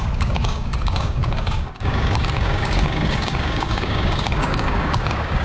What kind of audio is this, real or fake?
fake